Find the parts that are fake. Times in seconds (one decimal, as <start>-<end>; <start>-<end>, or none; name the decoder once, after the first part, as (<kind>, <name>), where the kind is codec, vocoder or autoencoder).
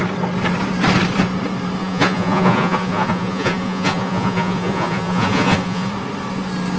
1.8-5.9 (vocoder, Vocos)